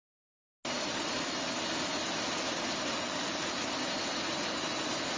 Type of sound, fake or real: real